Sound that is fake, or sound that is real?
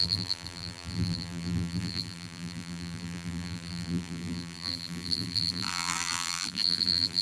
fake